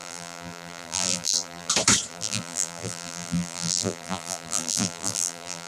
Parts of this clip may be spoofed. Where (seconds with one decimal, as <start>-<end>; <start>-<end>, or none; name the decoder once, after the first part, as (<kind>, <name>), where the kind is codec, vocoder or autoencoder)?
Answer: 0.0-1.7 (vocoder, BigVGAN v2); 2.1-5.7